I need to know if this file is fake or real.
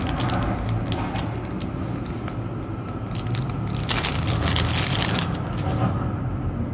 real